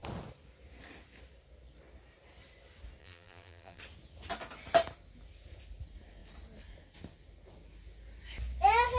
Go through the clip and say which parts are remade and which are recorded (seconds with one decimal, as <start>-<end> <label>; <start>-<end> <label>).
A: 0.0-3.0 recorded; 3.0-3.8 remade; 3.8-9.0 recorded